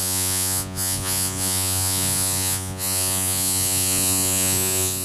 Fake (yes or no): yes